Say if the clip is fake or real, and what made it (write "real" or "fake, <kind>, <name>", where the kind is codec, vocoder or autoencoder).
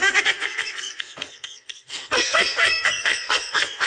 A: fake, codec, SNAC